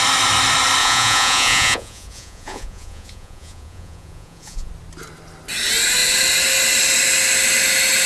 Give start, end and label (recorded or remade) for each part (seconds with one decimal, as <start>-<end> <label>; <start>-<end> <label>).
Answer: 0.0-0.8 recorded; 0.8-4.7 remade; 4.7-8.1 recorded